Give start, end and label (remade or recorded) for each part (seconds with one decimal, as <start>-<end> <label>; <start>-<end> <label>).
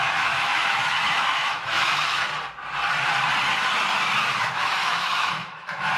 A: 0.0-2.3 remade; 2.3-4.4 recorded; 4.4-6.0 remade